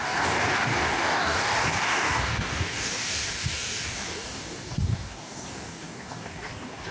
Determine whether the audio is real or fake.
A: fake